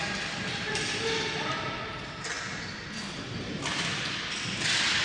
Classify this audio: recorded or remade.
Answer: recorded